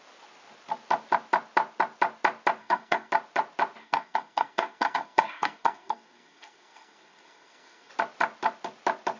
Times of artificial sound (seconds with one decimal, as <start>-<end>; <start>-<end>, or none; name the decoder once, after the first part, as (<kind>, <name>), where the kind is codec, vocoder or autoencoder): 2.6-3.1 (codec, SNAC); 3.8-7.9